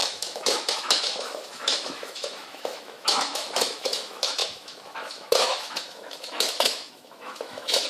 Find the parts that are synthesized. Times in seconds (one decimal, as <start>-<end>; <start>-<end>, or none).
0.0-7.9